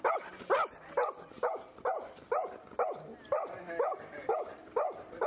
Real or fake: real